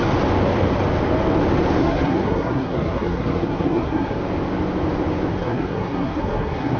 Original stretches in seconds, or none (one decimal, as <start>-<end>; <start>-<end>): 0.0-1.8; 4.2-5.3